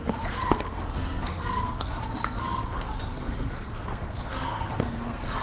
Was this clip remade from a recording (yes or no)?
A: yes